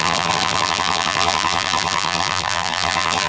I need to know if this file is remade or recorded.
remade